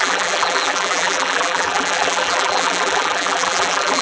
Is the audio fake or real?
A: fake